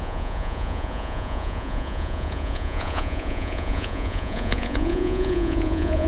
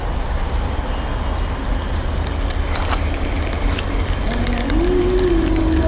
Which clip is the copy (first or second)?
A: first